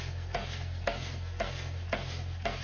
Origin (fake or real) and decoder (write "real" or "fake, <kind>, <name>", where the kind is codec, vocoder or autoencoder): fake, codec, SNAC